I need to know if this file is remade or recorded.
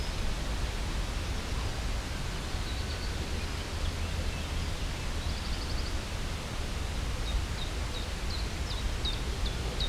recorded